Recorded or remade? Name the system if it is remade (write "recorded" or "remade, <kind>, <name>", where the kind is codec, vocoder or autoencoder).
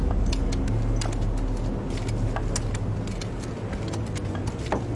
recorded